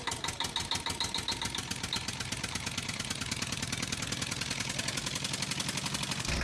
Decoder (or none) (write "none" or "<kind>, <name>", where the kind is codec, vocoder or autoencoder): none